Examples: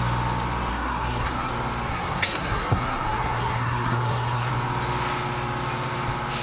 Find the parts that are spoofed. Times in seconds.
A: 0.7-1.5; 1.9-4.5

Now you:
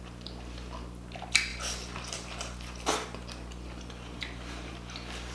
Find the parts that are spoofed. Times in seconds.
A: 1.5-4.7

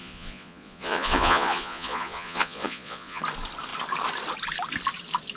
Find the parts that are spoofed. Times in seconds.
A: 0.0-3.2

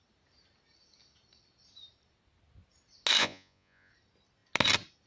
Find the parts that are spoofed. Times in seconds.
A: 3.2-3.9